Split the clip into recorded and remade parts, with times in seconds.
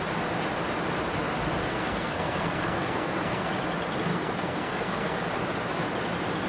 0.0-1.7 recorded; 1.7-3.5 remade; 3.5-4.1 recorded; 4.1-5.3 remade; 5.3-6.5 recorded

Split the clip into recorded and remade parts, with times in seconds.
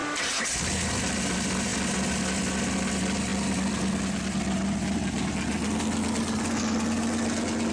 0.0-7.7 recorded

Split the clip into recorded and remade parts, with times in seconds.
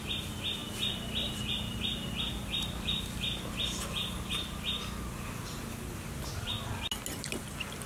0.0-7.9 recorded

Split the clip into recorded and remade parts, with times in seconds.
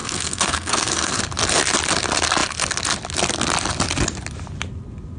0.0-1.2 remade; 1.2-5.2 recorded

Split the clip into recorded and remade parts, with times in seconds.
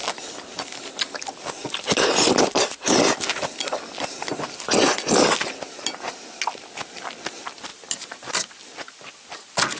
0.0-1.6 recorded; 1.6-3.0 remade; 3.0-7.7 recorded; 7.7-8.5 remade; 8.5-9.8 recorded